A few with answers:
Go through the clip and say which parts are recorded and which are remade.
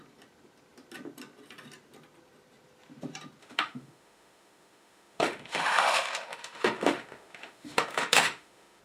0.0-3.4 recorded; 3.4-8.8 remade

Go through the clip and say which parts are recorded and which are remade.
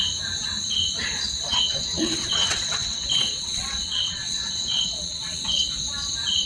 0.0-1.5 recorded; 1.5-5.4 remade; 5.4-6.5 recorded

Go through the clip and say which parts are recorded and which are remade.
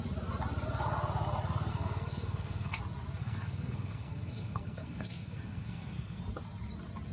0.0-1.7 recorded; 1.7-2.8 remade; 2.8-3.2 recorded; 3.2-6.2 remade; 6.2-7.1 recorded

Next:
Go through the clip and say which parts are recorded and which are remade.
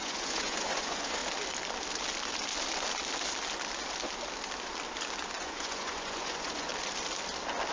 0.0-1.2 remade; 1.2-5.4 recorded; 5.4-6.7 remade; 6.7-7.7 recorded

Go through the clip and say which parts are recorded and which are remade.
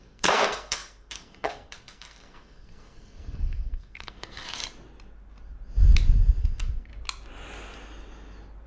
0.0-4.6 remade; 4.6-6.4 recorded; 6.4-6.9 remade; 6.9-8.7 recorded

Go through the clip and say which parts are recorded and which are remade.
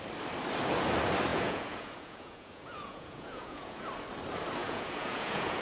0.0-1.3 recorded; 1.3-3.8 remade; 3.8-4.6 recorded; 4.6-5.6 remade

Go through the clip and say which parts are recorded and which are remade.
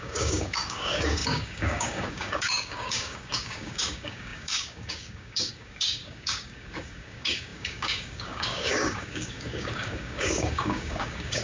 0.0-11.4 remade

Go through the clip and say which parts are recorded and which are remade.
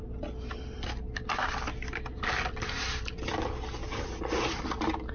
0.0-5.1 recorded